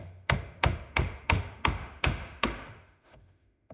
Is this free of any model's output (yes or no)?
no